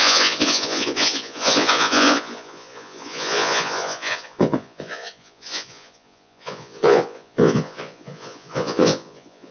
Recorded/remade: remade